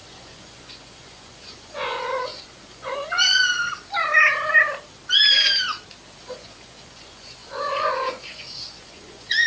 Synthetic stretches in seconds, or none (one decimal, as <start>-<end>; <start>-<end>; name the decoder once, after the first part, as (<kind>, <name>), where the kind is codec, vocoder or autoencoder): 0.0-3.4 (vocoder, Vocos); 6.2-9.5